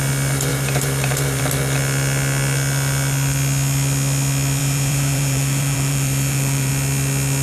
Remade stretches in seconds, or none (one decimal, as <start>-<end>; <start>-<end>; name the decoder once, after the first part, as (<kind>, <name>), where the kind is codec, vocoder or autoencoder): 0.5-1.4 (vocoder, BigVGAN v2); 4.6-6.7

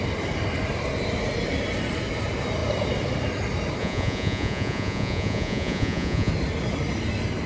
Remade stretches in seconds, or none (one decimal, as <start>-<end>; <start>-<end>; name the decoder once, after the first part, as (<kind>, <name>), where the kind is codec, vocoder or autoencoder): 3.8-6.3 (vocoder, Vocos)